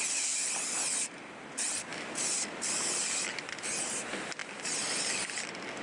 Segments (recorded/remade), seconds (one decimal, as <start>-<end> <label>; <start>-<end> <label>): 0.0-1.9 recorded; 1.9-3.8 remade; 3.8-5.8 recorded